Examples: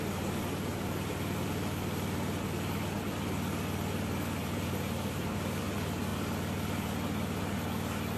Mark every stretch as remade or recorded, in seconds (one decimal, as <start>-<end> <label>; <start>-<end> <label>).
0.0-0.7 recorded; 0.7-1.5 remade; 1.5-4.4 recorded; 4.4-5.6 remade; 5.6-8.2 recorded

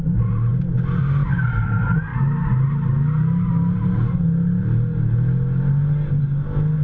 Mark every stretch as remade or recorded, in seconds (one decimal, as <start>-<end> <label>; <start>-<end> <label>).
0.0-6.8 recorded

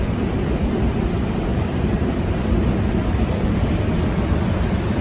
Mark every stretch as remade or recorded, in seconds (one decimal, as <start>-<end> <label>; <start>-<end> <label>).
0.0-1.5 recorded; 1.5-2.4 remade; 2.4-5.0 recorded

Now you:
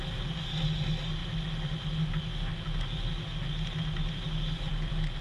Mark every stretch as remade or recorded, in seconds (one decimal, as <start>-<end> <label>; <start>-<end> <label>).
0.0-5.2 recorded

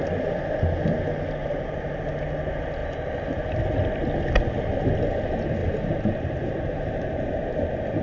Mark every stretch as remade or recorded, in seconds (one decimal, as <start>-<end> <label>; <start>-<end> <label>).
0.0-1.4 recorded; 1.4-2.2 remade; 2.2-5.6 recorded; 5.6-7.3 remade; 7.3-8.0 recorded

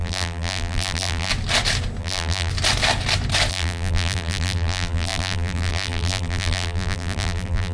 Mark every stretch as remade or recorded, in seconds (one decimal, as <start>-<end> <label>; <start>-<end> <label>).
0.0-1.3 remade; 1.3-2.0 recorded; 2.0-2.5 remade; 2.5-3.5 recorded; 3.5-7.7 remade